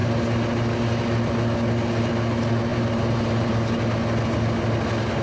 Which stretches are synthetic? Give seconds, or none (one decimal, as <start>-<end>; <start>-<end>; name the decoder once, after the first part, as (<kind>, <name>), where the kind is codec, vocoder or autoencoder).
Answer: 2.7-3.5 (vocoder, BigVGAN v2)